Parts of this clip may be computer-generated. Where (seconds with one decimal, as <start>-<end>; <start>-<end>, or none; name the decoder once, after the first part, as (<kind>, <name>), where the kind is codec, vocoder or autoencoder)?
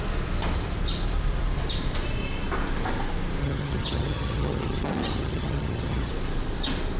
3.4-6.1 (vocoder, HiFi-GAN)